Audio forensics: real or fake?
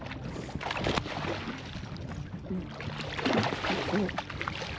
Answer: real